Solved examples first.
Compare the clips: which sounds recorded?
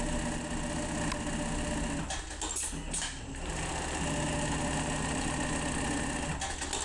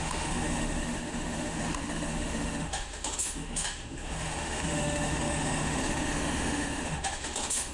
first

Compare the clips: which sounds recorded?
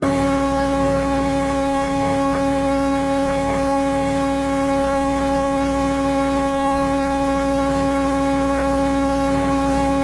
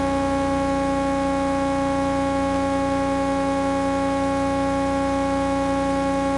second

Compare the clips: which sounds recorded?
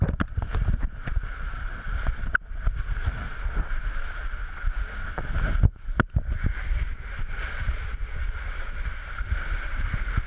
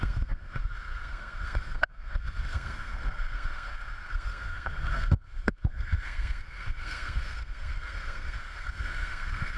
first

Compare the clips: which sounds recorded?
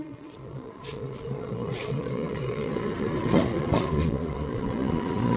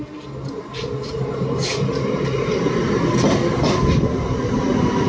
second